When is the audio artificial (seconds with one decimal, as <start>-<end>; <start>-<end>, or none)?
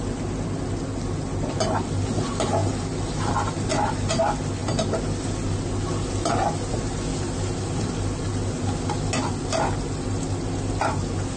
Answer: none